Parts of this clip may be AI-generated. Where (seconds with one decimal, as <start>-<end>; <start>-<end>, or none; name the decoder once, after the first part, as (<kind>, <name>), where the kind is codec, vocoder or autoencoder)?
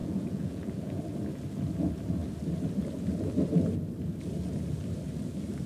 0.0-1.0 (vocoder, Vocos)